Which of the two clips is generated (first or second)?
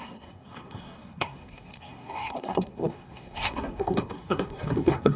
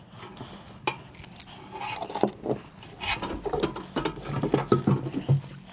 first